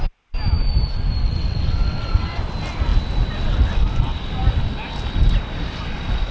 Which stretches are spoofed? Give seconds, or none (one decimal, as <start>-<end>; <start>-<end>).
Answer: 1.2-2.4